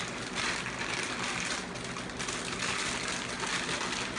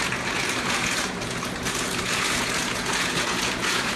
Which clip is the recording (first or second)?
first